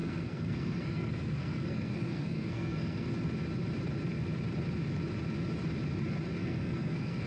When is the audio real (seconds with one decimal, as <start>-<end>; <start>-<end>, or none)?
3.1-6.4